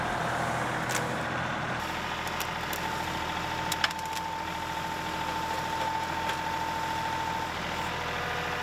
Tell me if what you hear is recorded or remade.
recorded